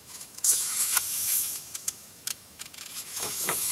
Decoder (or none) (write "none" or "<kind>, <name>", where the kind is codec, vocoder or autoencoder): autoencoder, DAC-VAE